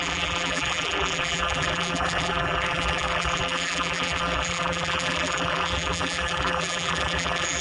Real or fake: fake